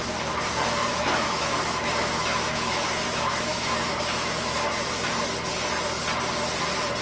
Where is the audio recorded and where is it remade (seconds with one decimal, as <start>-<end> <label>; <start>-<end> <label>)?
0.0-0.9 recorded; 0.9-5.1 remade; 5.1-7.0 recorded